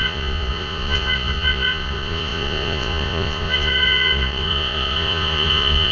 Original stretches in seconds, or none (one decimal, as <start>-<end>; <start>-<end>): none